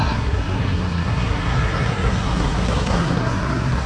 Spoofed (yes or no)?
yes